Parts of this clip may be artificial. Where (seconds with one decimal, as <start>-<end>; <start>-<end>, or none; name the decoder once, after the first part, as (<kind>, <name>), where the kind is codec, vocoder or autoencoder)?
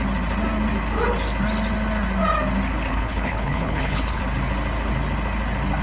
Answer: 2.9-4.2 (codec, HILCodec)